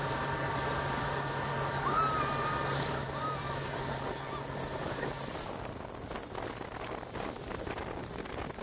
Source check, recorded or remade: recorded